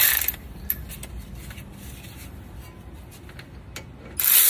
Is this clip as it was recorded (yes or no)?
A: yes